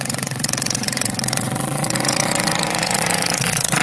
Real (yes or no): no